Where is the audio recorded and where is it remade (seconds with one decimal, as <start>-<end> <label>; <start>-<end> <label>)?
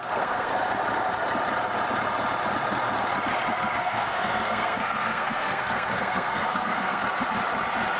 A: 0.0-0.5 remade; 0.5-3.8 recorded; 3.8-7.0 remade; 7.0-8.0 recorded